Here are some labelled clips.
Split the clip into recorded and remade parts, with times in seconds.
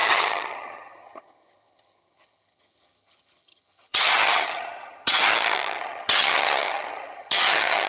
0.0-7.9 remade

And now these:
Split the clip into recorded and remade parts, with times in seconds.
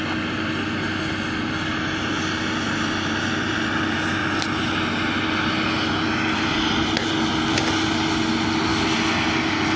0.0-9.8 recorded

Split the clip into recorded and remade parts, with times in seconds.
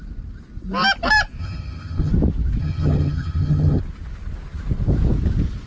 0.0-1.4 recorded; 1.4-2.1 remade; 2.1-2.6 recorded; 2.6-3.8 remade; 3.8-5.7 recorded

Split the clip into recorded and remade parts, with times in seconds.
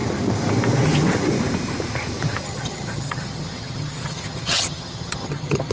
0.0-2.4 recorded; 2.4-5.7 remade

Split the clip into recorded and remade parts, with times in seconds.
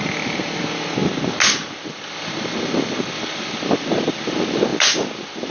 0.0-5.5 recorded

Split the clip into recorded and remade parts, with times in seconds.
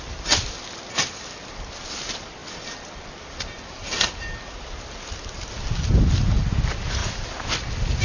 0.0-8.0 recorded